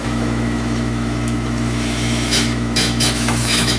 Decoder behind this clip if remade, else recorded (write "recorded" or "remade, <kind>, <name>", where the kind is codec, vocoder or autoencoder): remade, autoencoder, DAC-VAE